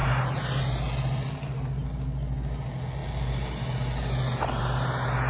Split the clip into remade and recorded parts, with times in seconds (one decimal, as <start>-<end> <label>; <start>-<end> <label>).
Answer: 0.0-5.3 recorded